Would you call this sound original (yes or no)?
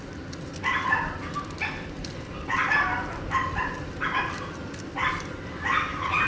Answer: yes